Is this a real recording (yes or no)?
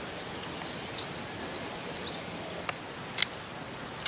yes